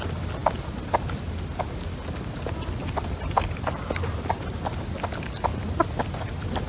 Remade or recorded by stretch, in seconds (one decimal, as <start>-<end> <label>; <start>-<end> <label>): 0.0-6.7 recorded